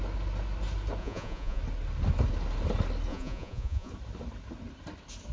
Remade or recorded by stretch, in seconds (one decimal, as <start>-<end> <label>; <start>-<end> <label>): 0.0-1.0 recorded; 1.0-1.6 remade; 1.6-3.1 recorded; 3.1-3.9 remade; 3.9-5.3 recorded